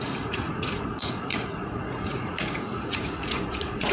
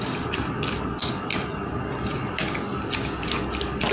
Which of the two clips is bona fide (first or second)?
second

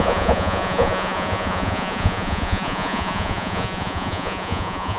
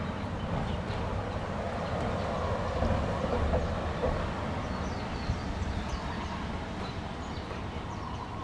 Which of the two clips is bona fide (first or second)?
second